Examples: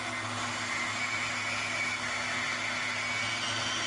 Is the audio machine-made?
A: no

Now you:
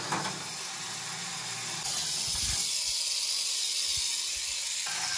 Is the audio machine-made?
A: no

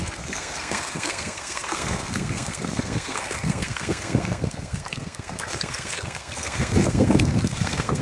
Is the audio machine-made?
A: yes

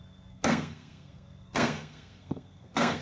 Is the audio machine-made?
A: yes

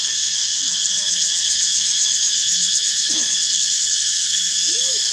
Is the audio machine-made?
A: yes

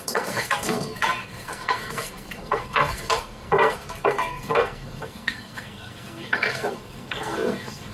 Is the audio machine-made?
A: yes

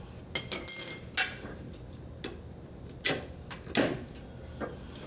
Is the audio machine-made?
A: no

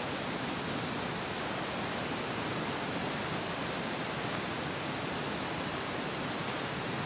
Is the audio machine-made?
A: no